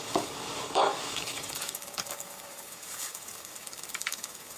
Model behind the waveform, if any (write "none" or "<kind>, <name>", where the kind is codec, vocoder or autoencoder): codec, DAC